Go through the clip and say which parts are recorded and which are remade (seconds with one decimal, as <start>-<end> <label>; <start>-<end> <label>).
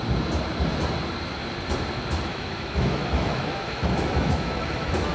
0.0-2.3 recorded; 2.3-5.1 remade